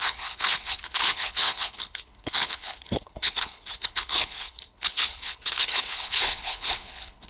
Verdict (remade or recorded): remade